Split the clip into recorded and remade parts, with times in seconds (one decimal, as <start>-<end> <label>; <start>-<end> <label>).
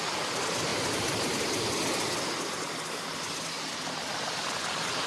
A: 0.0-5.1 recorded